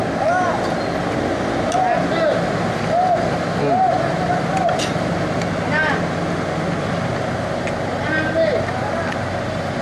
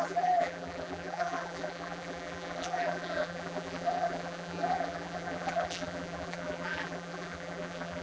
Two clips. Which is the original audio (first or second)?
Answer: first